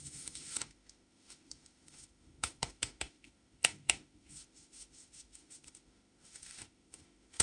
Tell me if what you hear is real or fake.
fake